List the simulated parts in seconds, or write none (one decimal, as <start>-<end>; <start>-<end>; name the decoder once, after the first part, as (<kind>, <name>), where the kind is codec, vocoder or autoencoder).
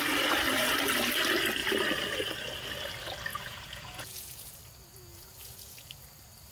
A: 3.3-4.6 (vocoder, Vocos); 5.1-5.9